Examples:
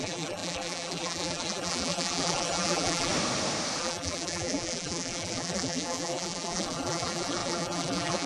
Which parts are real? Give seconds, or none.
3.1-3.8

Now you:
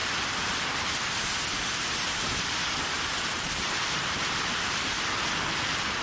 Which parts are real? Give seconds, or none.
0.0-1.7; 5.1-6.0

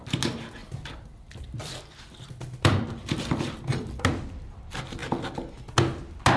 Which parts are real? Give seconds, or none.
0.0-0.6; 4.0-6.4